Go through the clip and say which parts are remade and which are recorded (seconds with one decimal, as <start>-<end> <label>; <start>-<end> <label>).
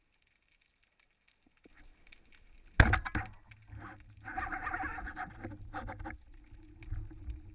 0.0-7.5 recorded